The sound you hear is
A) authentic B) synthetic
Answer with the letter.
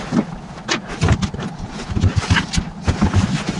A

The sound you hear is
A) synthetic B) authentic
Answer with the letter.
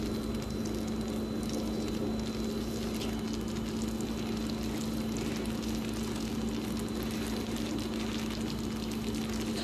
B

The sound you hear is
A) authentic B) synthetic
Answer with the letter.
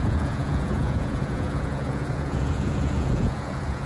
B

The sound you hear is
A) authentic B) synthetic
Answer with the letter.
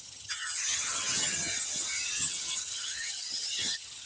B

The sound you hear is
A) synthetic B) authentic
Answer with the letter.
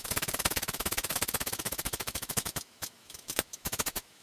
A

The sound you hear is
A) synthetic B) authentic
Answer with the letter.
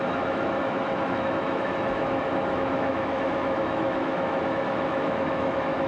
A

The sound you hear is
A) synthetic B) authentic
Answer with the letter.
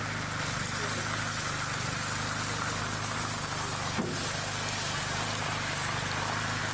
B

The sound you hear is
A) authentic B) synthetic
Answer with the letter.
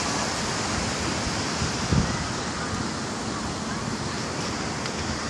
A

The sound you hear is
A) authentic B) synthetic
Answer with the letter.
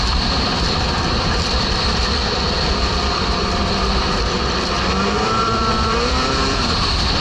B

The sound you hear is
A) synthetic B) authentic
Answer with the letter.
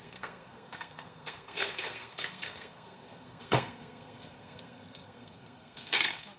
A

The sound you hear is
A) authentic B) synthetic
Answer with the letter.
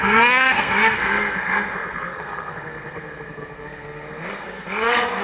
B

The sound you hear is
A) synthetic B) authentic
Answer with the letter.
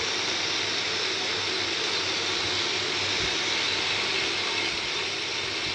B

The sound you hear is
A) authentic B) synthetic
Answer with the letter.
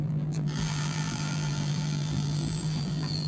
B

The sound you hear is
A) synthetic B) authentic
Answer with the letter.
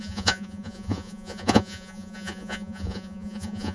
A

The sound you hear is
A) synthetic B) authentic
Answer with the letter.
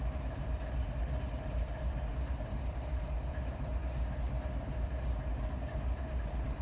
A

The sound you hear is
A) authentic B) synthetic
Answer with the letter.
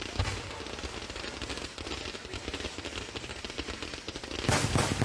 A